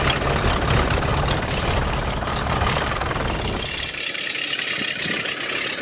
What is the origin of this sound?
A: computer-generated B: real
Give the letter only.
B